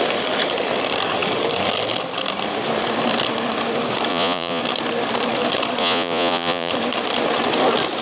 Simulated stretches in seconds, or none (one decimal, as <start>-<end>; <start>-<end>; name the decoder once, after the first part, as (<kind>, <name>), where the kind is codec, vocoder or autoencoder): 4.1-4.6 (vocoder, Vocos); 5.8-6.7